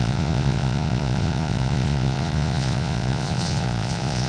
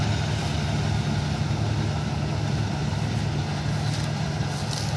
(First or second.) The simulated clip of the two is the first